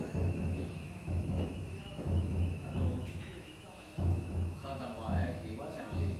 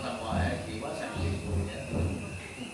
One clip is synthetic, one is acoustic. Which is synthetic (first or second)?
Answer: first